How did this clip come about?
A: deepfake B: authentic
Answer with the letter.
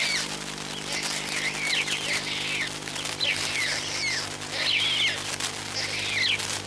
B